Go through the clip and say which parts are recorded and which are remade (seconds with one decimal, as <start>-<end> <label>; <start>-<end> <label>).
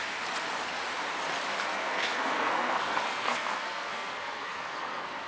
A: 0.0-1.7 recorded; 1.7-5.3 remade